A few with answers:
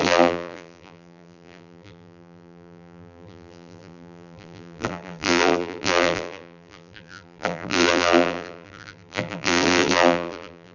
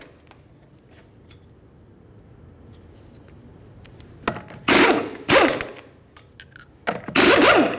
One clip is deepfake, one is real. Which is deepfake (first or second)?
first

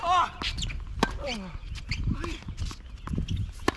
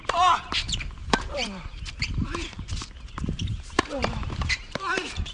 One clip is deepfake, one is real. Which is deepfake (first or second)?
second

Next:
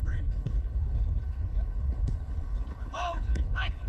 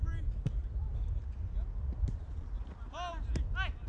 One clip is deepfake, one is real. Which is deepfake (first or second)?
first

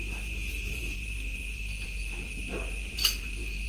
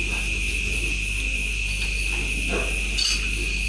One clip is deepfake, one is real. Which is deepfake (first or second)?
first